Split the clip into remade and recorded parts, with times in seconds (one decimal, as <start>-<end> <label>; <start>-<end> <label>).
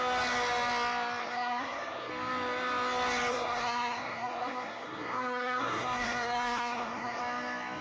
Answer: 0.0-1.2 recorded; 1.2-2.1 remade; 2.1-3.3 recorded; 3.3-7.2 remade; 7.2-7.8 recorded